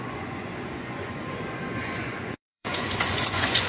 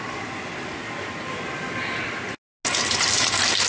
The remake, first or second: first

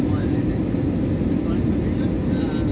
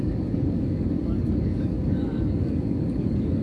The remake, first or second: second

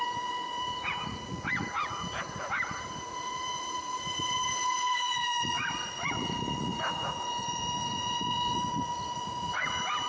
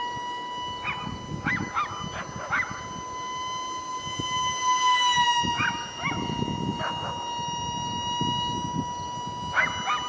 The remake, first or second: first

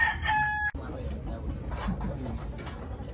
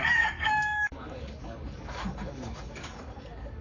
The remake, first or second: second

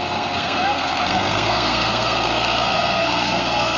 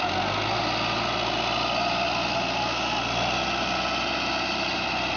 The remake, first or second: first